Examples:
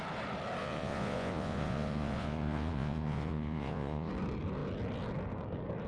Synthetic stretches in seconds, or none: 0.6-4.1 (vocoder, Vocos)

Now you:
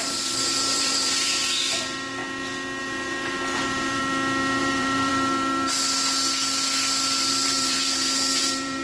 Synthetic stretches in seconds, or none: 0.0-2.2 (vocoder, BigVGAN v2); 2.8-4.0; 4.6-5.1; 7.3-8.8

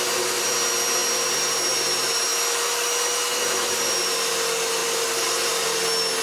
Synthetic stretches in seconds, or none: 4.8-5.8 (vocoder, BigVGAN v2)

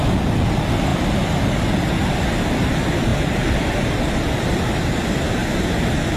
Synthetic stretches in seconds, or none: 3.1-4.1 (vocoder, BigVGAN v2); 5.4-6.2